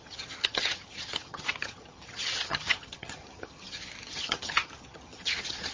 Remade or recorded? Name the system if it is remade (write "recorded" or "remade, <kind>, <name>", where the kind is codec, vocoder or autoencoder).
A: remade, vocoder, HiFi-GAN